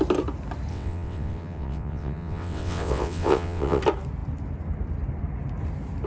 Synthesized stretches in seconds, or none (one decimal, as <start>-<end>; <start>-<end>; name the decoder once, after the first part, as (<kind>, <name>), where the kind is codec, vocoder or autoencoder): 0.7-3.8 (vocoder, WaveNeXt)